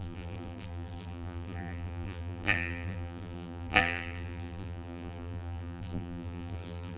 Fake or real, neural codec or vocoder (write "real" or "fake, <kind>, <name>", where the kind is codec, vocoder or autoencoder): fake, vocoder, BigVGAN v2